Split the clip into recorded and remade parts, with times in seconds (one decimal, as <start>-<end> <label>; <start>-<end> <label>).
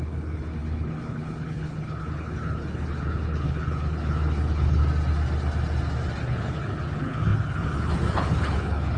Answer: 0.0-4.8 remade; 4.8-6.2 recorded; 6.2-9.0 remade